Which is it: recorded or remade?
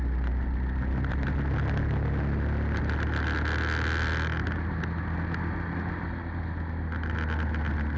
recorded